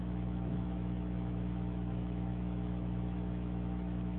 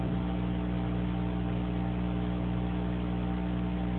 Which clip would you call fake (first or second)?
first